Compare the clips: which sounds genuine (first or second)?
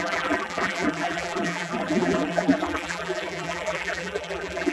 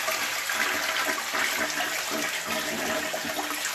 second